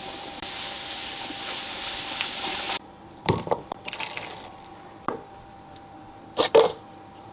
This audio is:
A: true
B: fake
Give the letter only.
B